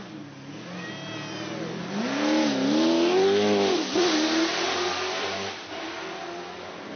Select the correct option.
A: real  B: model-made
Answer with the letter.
A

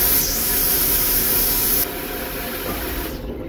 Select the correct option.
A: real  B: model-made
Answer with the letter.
A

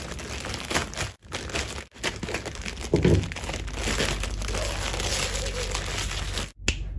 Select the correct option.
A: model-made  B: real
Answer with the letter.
B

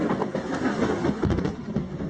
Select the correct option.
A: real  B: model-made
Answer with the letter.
A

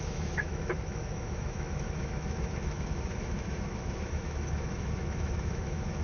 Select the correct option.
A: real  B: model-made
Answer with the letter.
B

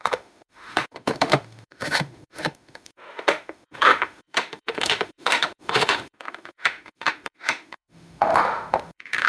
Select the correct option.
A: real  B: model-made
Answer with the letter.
B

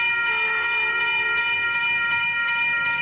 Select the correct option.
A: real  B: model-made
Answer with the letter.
B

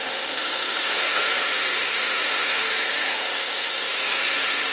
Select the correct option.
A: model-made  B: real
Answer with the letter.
A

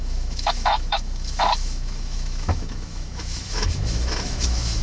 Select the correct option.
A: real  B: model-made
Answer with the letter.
B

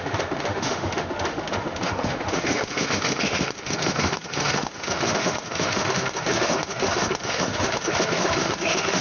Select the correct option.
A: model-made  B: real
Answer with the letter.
A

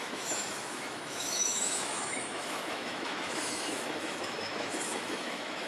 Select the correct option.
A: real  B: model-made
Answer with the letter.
B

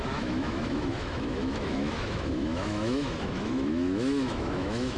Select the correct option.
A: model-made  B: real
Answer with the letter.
A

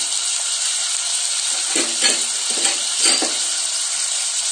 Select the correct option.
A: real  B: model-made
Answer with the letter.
A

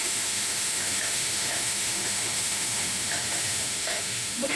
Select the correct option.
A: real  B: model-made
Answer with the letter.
B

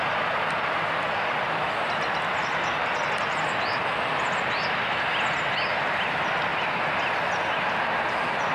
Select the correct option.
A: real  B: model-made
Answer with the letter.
A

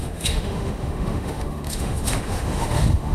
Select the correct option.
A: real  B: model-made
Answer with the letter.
B